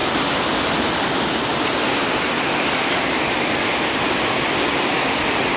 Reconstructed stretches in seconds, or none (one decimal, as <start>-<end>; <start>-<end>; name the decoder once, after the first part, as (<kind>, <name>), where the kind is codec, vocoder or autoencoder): none